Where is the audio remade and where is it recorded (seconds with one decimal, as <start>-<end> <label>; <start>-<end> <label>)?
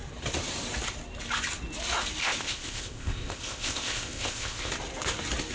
0.0-2.2 recorded; 2.2-4.7 remade; 4.7-5.5 recorded